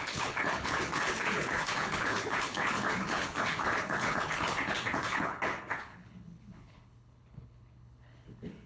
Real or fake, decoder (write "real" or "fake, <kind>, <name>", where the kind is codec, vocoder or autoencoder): fake, codec, HILCodec